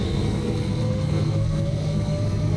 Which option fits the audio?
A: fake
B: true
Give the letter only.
A